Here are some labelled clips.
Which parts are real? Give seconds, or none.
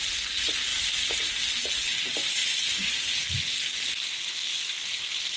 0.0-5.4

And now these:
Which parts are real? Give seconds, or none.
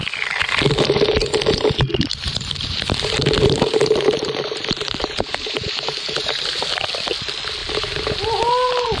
0.0-1.9; 6.8-7.6; 8.4-9.0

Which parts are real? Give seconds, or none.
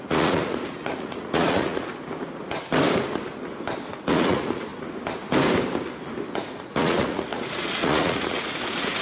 1.9-4.1; 4.7-6.4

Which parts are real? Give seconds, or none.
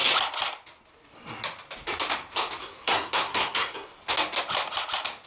0.0-2.6; 4.0-5.3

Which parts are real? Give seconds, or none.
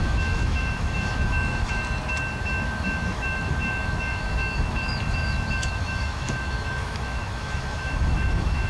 1.8-2.4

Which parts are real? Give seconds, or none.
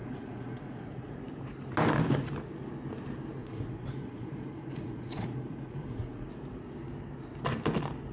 1.2-3.4; 6.3-8.1